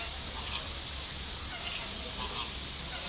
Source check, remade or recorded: recorded